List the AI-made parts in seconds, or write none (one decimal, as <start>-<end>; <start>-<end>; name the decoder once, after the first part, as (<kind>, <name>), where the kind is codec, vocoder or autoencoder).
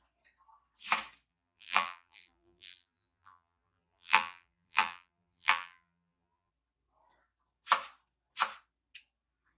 1.3-6.5 (vocoder, BigVGAN v2)